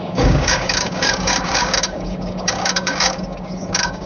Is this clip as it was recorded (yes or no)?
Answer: no